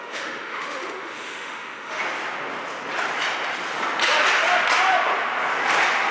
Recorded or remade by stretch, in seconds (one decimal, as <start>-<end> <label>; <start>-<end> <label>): 0.0-2.0 remade; 2.0-6.1 recorded